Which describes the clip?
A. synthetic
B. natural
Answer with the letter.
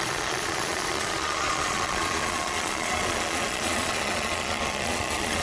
A